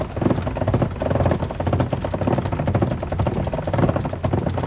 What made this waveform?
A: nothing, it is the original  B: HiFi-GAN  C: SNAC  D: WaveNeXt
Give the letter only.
A